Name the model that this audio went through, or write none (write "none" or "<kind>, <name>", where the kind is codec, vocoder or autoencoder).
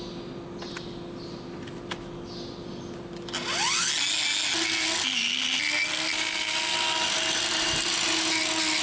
none